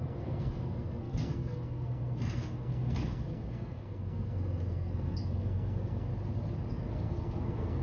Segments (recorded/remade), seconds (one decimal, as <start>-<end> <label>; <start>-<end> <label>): 0.0-6.1 remade; 6.1-6.7 recorded; 6.7-7.8 remade